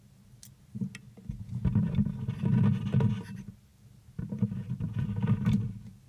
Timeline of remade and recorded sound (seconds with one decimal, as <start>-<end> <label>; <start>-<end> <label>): 0.0-6.1 recorded